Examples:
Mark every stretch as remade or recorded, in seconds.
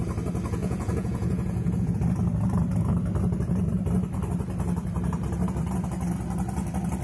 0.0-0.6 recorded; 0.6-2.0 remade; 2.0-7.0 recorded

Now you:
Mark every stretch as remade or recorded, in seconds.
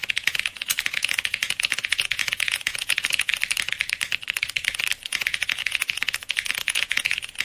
0.0-3.3 remade; 3.3-5.1 recorded; 5.1-7.4 remade